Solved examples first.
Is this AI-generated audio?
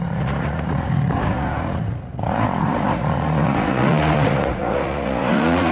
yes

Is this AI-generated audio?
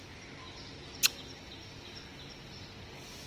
no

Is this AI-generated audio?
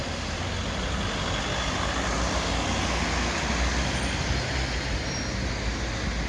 no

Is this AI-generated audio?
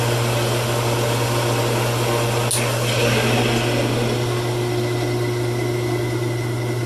no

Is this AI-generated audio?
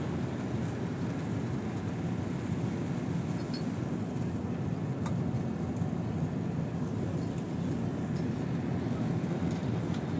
no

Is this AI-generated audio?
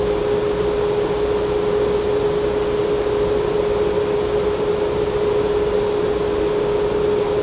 no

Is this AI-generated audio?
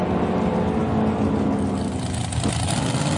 no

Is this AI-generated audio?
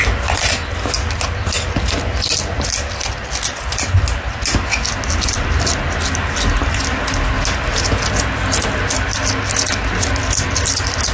no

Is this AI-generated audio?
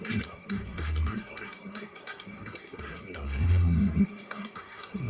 yes